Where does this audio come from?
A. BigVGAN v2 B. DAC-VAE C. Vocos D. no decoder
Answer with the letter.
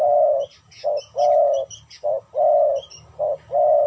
D